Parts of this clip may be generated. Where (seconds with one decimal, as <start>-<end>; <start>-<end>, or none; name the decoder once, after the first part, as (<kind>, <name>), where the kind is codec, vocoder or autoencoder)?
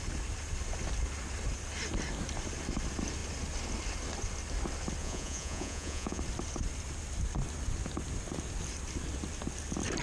5.0-6.2 (vocoder, Vocos)